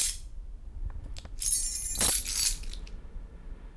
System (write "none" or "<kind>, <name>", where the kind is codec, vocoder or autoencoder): none